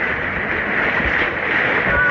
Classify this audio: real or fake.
real